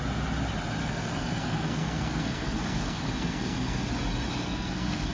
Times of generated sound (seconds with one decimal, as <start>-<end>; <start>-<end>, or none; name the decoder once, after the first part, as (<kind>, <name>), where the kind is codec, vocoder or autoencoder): 0.8-3.9 (codec, SNAC); 4.3-5.1